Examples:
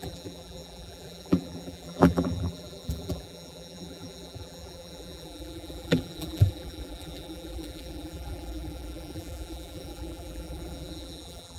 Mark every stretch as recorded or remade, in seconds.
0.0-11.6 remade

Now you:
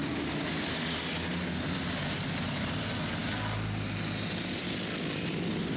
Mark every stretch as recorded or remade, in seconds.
0.0-5.8 recorded

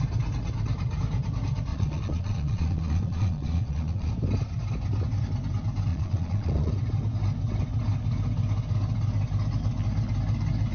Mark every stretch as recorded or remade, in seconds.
0.0-1.7 recorded; 1.7-4.1 remade; 4.1-5.9 recorded; 5.9-6.7 remade; 6.7-10.7 recorded

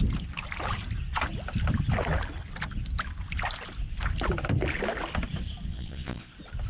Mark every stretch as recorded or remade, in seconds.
0.0-5.7 recorded; 5.7-6.3 remade; 6.3-6.7 recorded

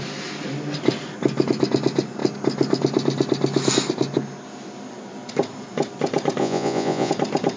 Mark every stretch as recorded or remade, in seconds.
0.0-6.4 recorded; 6.4-7.1 remade; 7.1-7.6 recorded

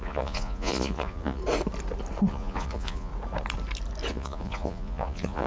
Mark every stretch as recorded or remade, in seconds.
0.0-1.4 remade; 1.4-2.3 recorded; 2.3-3.1 remade; 3.1-4.1 recorded; 4.1-5.5 remade

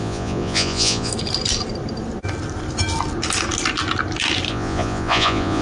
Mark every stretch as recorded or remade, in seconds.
0.0-1.1 remade; 1.1-4.5 recorded; 4.5-5.6 remade

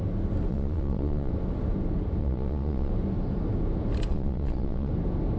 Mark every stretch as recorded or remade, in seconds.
0.0-0.5 recorded; 0.5-1.3 remade; 1.3-2.2 recorded; 2.2-2.9 remade; 2.9-4.1 recorded; 4.1-4.9 remade; 4.9-5.4 recorded